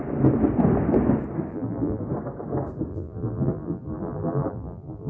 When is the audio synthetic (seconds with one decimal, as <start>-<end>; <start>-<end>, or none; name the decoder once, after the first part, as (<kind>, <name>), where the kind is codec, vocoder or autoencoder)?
1.5-2.0 (vocoder, BigVGAN v2); 2.9-5.1